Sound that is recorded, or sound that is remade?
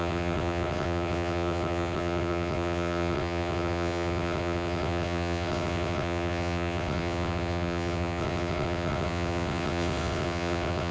remade